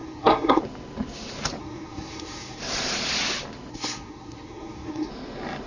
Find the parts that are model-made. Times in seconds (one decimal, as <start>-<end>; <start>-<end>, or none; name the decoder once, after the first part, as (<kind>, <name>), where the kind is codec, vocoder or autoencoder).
0.0-0.6 (codec, SNAC); 1.6-2.6; 3.7-5.1